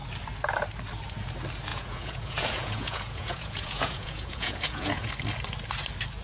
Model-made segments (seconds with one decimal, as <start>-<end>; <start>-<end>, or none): 1.7-5.1